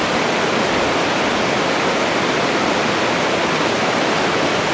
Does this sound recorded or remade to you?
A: recorded